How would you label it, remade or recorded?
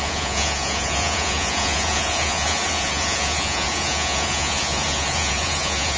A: remade